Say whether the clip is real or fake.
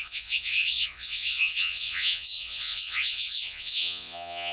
fake